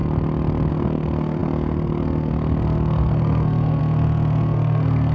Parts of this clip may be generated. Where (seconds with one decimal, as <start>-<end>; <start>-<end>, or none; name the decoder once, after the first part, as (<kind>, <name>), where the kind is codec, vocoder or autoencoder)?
0.7-5.1 (codec, SNAC)